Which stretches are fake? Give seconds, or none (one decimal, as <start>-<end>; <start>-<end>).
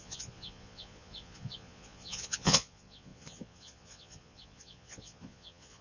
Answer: 0.0-5.8